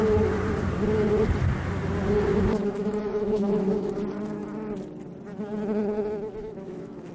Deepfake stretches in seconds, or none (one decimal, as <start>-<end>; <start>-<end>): 2.3-3.9; 6.4-7.1